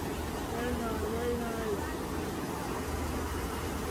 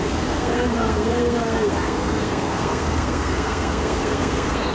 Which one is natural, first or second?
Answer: first